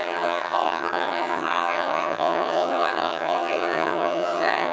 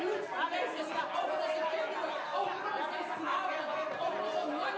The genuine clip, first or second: second